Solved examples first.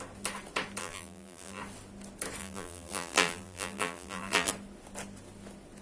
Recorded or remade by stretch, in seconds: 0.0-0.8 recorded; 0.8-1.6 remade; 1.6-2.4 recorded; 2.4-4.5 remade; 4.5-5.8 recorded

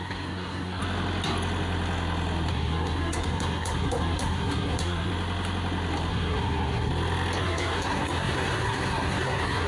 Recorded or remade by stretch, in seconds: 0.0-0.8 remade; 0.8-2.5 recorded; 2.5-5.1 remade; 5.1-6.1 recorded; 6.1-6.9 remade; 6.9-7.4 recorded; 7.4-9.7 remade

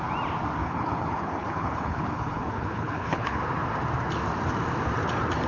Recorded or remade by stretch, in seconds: 0.0-0.6 recorded; 0.6-3.4 remade; 3.4-5.5 recorded

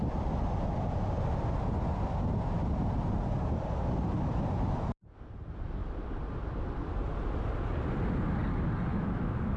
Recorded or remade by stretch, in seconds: 0.0-8.9 recorded; 8.9-9.6 remade

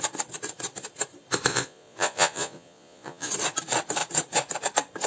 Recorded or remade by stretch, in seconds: 0.0-1.5 recorded; 1.5-3.3 remade; 3.3-5.1 recorded

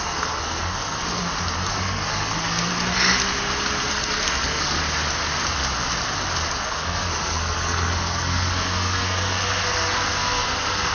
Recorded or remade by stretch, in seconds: 0.0-1.2 remade; 1.2-1.7 recorded; 1.7-2.7 remade; 2.7-3.9 recorded; 3.9-4.8 remade; 4.8-6.6 recorded; 6.6-10.9 remade